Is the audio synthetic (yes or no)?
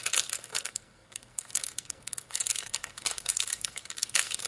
yes